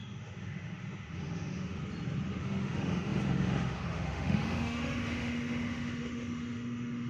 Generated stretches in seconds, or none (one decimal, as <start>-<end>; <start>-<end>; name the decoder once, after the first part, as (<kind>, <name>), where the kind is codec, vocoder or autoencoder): 0.0-1.8 (autoencoder, DAC-VAE); 2.4-7.1